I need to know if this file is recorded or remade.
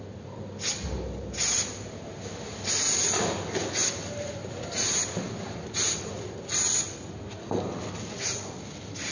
recorded